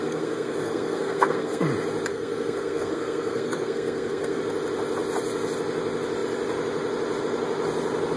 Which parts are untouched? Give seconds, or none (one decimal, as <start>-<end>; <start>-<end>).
1.6-2.1; 4.4-8.2